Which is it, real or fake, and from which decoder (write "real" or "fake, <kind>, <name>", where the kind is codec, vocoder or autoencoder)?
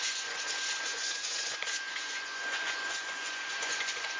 fake, vocoder, Vocos